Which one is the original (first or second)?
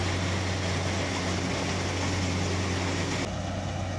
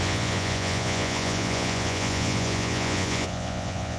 first